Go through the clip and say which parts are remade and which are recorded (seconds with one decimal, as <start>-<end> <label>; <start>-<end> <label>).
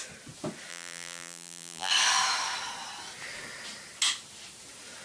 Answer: 0.0-0.7 recorded; 0.7-1.9 remade; 1.9-5.0 recorded